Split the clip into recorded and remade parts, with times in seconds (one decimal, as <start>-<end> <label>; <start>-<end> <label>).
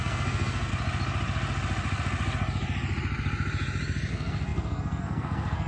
0.0-0.7 remade; 0.7-4.1 recorded; 4.1-5.7 remade